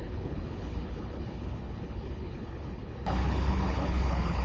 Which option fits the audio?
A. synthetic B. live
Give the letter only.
A